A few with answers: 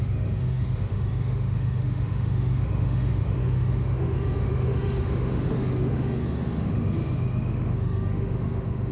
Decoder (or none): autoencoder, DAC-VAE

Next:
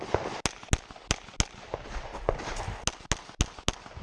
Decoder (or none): none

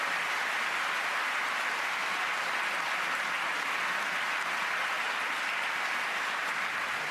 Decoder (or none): none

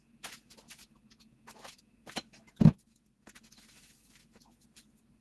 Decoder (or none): autoencoder, DAC-VAE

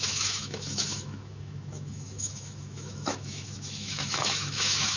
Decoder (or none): autoencoder, DAC-VAE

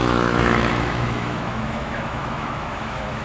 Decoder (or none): autoencoder, DAC-VAE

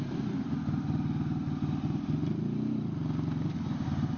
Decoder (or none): none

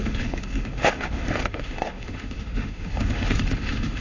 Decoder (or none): autoencoder, DAC-VAE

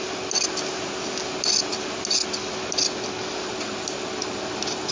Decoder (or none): none